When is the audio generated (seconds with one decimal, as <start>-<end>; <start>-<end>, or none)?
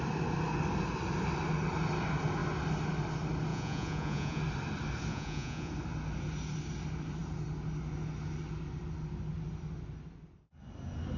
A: 3.5-4.4; 5.1-5.7